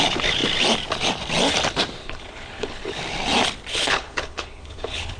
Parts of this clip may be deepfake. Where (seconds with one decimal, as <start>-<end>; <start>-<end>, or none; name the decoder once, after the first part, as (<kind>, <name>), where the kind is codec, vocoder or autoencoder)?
2.0-3.0 (codec, HILCodec); 3.7-5.2